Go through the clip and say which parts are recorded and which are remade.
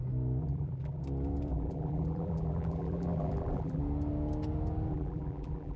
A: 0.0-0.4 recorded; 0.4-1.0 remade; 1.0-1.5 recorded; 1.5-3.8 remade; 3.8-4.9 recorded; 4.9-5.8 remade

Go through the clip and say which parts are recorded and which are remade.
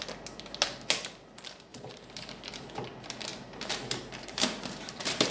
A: 0.0-1.7 recorded; 1.7-2.7 remade; 2.7-3.3 recorded; 3.3-5.3 remade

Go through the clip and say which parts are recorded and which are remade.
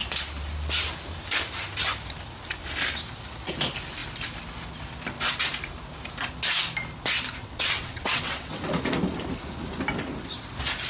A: 0.0-7.4 recorded; 7.4-8.7 remade; 8.7-10.9 recorded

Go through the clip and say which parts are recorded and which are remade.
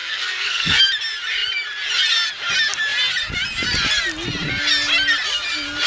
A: 0.0-0.8 remade; 0.8-5.9 recorded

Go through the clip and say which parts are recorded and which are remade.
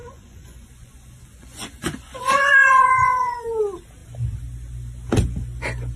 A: 0.0-3.6 remade; 3.6-6.0 recorded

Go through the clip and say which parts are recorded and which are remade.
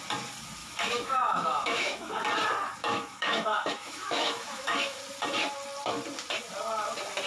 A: 0.0-0.6 recorded; 0.6-2.1 remade; 2.1-2.8 recorded; 2.8-5.0 remade; 5.0-7.3 recorded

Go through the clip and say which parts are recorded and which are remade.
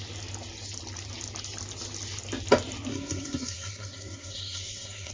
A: 0.0-2.9 recorded; 2.9-5.1 remade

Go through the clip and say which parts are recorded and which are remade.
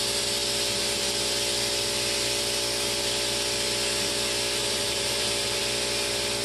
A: 0.0-4.6 recorded; 4.6-5.6 remade; 5.6-6.4 recorded